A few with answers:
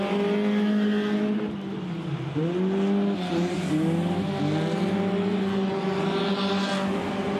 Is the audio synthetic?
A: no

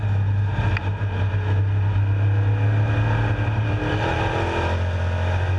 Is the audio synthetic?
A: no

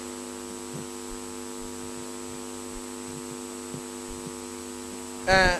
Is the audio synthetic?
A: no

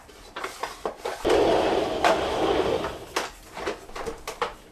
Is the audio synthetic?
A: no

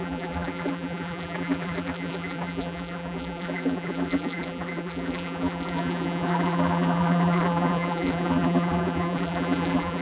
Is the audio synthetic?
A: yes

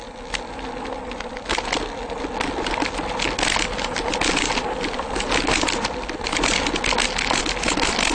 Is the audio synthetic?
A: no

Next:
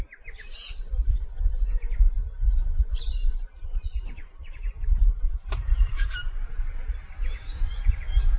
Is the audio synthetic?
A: yes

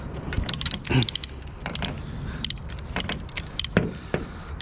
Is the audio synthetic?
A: yes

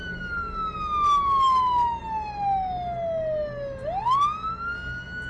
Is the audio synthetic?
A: no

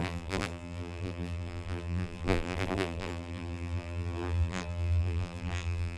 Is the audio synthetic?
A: yes